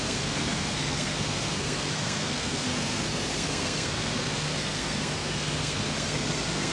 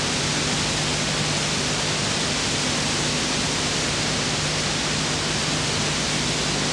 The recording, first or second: second